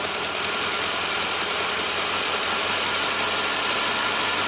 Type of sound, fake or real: real